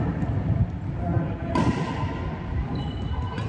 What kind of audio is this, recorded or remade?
recorded